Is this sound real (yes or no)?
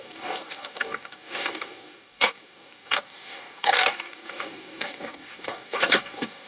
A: no